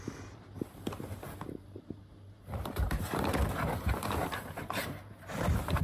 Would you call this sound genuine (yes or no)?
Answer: no